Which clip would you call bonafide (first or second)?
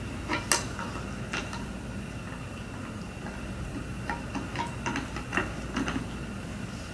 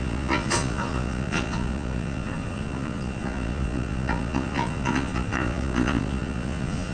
first